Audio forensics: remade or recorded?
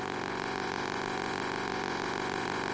remade